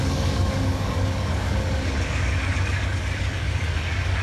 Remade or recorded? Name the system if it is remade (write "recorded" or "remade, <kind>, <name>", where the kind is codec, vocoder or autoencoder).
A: remade, codec, DAC